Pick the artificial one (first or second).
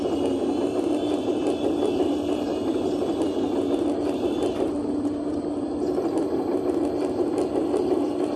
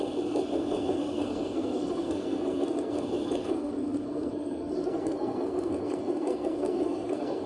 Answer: second